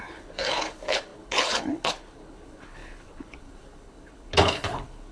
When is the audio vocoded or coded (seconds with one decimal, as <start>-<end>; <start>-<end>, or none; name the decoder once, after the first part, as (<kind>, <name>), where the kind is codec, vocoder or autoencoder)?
0.0-5.1 (codec, HILCodec)